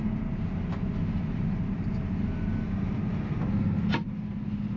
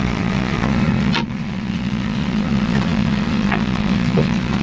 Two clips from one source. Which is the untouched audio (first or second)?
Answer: first